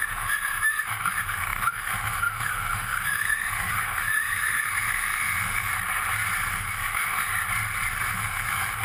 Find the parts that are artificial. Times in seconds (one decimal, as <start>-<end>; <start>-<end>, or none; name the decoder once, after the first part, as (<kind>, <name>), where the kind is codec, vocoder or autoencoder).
0.0-5.7 (autoencoder, DAC-VAE); 6.5-7.3; 8.1-8.8